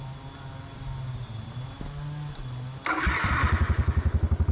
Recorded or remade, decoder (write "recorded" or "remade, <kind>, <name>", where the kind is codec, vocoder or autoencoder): recorded